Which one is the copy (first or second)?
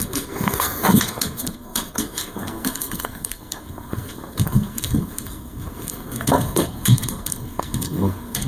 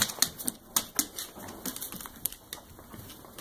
first